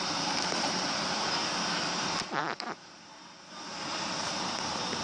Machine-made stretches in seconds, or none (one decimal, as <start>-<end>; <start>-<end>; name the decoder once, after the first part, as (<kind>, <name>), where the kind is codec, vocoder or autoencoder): 0.0-1.4 (vocoder, BigVGAN v2); 1.9-5.0